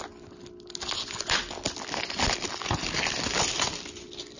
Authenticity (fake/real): real